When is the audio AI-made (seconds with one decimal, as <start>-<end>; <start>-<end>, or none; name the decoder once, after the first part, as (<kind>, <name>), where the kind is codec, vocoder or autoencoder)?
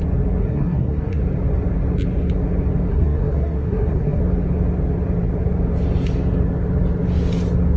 0.4-1.2 (codec, SNAC); 2.9-4.2